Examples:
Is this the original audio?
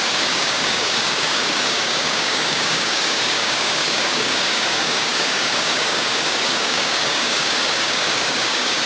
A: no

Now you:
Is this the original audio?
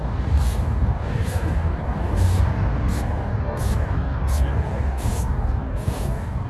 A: no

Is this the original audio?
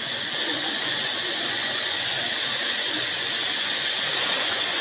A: no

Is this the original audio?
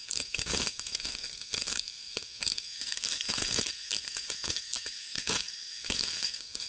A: no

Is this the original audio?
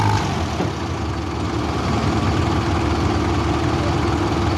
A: yes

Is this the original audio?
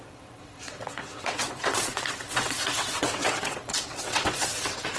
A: no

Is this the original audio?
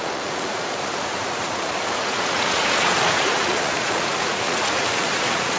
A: no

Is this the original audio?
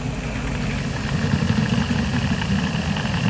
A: yes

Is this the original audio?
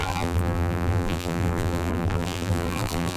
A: no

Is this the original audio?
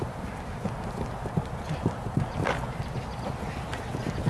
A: yes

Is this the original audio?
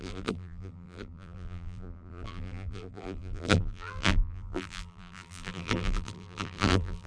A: no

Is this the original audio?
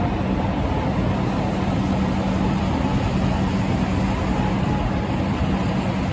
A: yes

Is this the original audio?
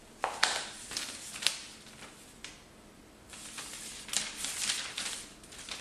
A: no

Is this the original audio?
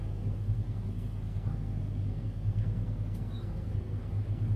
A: no